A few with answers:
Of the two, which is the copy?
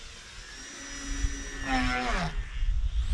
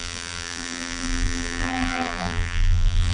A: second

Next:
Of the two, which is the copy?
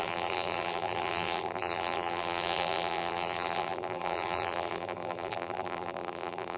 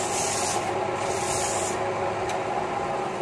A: first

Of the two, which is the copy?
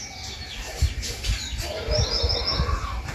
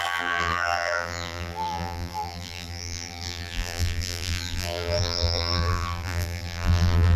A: second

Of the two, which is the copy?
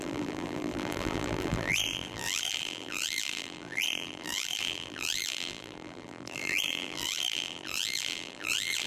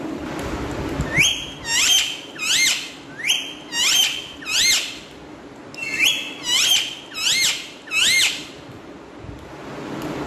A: first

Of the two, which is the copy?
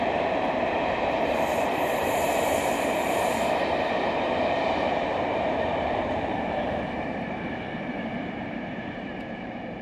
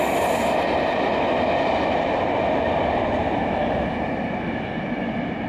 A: first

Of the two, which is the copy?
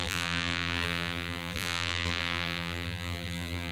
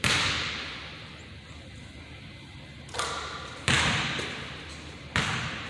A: first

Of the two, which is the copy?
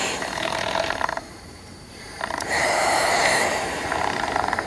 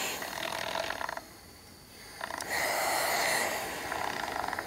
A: first